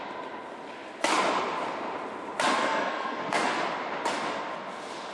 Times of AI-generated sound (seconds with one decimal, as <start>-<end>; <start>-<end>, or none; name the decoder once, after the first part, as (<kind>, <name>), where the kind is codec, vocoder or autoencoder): 2.6-3.6 (codec, SNAC)